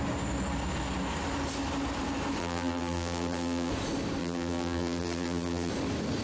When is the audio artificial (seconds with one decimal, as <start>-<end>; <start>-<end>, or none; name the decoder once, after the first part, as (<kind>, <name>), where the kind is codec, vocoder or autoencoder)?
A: 2.4-3.7 (vocoder, BigVGAN v2); 4.2-5.7